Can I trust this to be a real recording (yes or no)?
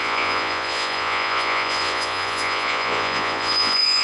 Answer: no